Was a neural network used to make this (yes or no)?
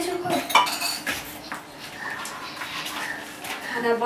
no